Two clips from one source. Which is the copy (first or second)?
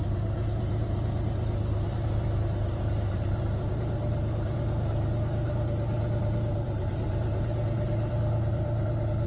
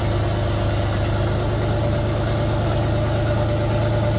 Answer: first